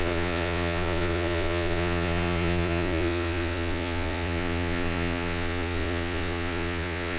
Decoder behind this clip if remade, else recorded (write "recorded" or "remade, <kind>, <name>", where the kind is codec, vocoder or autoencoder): remade, vocoder, Vocos